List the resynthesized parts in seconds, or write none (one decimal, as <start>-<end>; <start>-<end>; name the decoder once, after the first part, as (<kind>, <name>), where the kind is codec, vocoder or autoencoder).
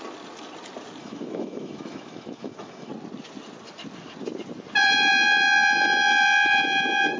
1.0-2.9 (autoencoder, DAC-VAE)